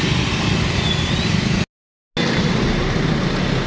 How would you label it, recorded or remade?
recorded